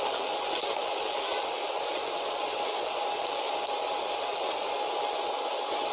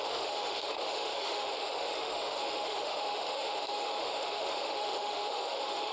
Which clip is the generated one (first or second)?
second